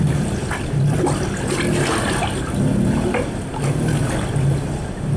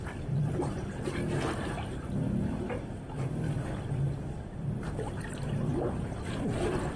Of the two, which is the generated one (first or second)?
second